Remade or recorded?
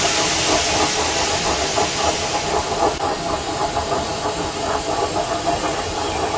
recorded